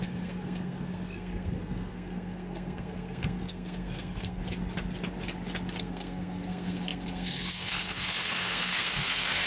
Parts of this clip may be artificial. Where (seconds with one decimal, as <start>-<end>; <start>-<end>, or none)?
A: 0.0-4.4; 5.8-9.5